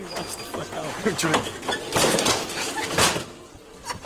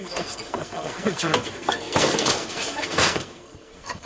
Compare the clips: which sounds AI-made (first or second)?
second